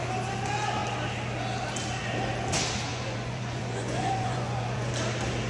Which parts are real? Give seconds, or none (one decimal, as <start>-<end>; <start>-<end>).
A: 0.0-2.9; 4.9-5.5